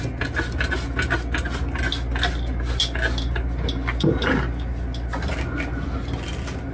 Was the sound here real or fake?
real